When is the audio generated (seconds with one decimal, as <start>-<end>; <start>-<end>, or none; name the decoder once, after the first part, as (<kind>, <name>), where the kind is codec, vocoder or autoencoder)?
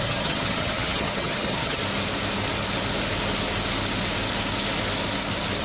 0.0-1.8 (vocoder, HiFi-GAN)